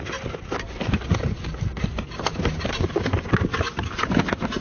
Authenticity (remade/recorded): recorded